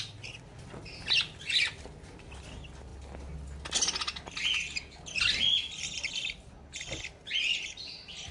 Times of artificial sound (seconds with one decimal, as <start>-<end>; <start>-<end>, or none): none